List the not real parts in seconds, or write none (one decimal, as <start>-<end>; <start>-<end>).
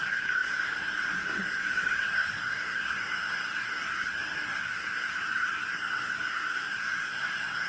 0.0-7.7